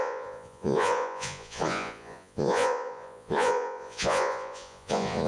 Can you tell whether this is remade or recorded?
remade